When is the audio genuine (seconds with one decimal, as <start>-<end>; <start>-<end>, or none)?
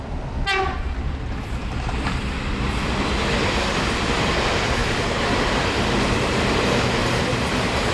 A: 0.0-1.6; 2.2-4.8; 6.6-7.0